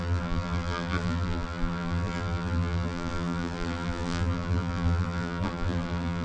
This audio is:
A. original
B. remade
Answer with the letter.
B